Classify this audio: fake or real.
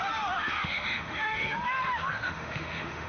fake